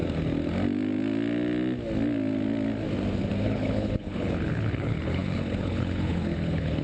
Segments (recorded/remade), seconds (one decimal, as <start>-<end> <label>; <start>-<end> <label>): 0.0-3.4 recorded; 3.4-6.8 remade